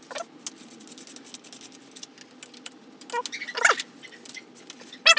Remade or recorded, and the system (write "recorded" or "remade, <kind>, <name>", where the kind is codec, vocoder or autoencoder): recorded